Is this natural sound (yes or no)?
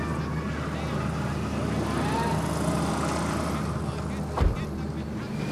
yes